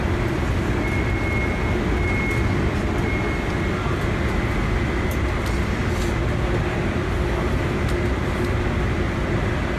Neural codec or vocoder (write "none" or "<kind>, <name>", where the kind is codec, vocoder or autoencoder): none